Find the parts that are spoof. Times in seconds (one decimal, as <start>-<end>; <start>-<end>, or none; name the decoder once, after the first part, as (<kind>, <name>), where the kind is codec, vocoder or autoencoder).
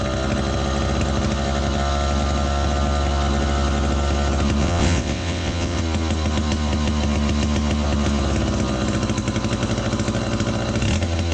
4.6-5.8 (vocoder, WaveNeXt)